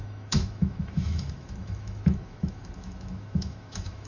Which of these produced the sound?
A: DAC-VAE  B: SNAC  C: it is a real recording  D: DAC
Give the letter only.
A